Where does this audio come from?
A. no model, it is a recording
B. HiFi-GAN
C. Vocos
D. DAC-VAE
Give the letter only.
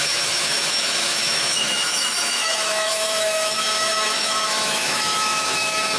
D